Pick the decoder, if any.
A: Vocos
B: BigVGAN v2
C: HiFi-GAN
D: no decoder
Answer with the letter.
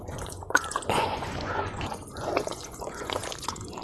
A